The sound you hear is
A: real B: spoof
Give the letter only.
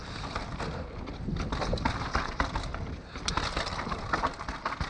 A